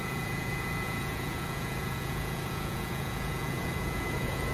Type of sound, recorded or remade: remade